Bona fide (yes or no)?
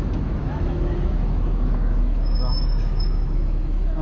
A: no